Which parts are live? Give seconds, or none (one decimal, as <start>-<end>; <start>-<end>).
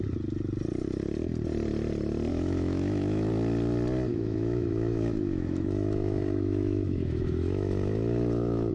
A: 0.0-2.3; 3.3-4.1